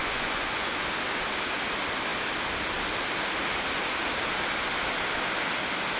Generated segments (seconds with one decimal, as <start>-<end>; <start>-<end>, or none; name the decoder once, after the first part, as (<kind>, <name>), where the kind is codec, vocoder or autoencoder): 0.0-0.7 (vocoder, Vocos)